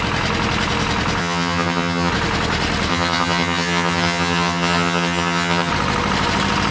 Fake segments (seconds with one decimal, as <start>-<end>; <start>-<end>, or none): 1.2-2.1; 2.9-5.7

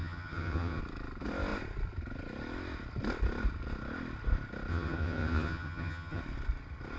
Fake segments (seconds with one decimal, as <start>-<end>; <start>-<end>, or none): 0.0-0.8; 4.7-6.2